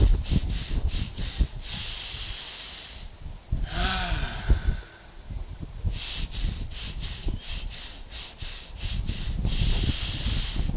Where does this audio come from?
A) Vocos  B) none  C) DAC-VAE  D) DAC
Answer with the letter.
B